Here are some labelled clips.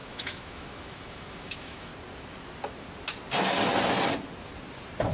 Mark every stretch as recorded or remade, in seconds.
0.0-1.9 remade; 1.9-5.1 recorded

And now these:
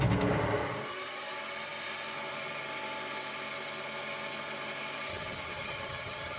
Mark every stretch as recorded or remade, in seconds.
0.0-5.1 recorded; 5.1-6.4 remade

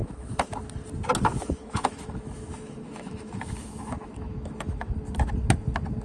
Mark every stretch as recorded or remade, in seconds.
0.0-0.5 remade; 0.5-1.3 recorded; 1.3-4.9 remade; 4.9-6.0 recorded

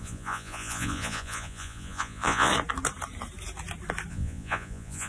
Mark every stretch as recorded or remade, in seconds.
0.0-2.5 remade; 2.5-4.1 recorded; 4.1-5.1 remade